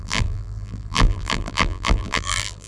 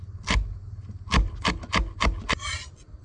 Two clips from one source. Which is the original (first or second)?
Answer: second